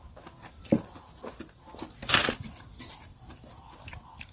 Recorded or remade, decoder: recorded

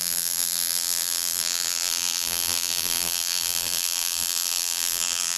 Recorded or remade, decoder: remade, vocoder, BigVGAN v2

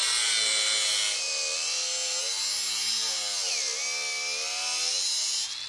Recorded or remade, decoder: recorded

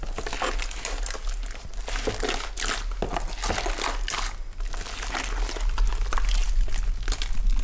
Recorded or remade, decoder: recorded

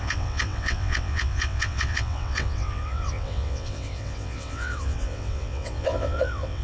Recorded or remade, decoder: remade, vocoder, WaveNeXt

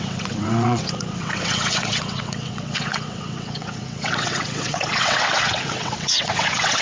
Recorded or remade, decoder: remade, vocoder, WaveNeXt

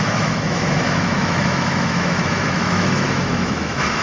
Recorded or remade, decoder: remade, autoencoder, DAC-VAE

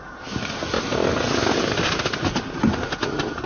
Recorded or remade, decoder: recorded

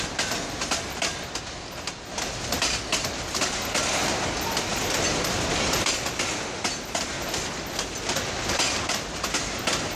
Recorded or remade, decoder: recorded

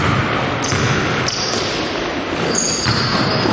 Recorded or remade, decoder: recorded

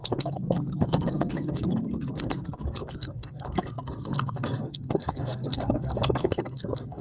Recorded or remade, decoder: remade, codec, SNAC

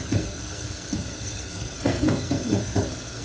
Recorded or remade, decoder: remade, codec, SNAC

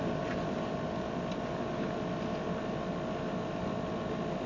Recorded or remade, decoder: recorded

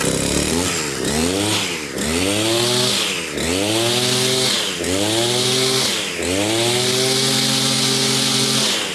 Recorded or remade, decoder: recorded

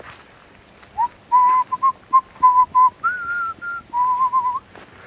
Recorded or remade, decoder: recorded